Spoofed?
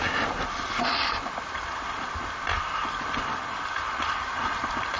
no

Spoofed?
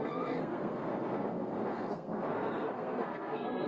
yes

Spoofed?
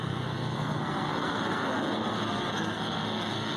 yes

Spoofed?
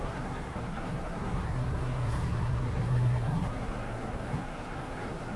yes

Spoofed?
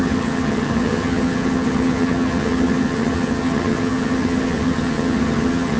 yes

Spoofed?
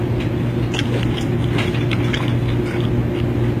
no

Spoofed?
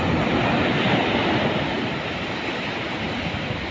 no